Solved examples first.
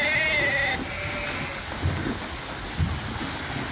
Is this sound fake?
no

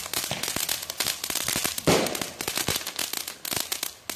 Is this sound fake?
no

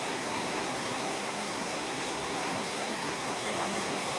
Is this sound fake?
yes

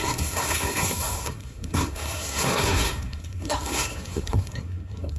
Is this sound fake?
yes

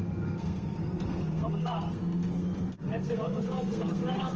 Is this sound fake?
yes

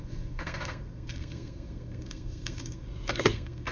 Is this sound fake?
yes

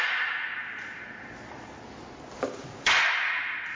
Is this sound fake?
no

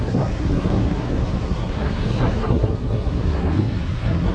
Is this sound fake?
yes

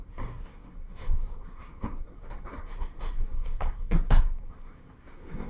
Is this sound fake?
yes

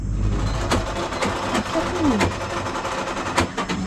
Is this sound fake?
no